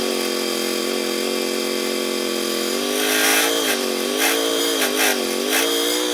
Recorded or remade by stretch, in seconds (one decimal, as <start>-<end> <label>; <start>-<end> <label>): 0.0-3.3 recorded; 3.3-4.6 remade; 4.6-5.1 recorded; 5.1-5.6 remade; 5.6-6.1 recorded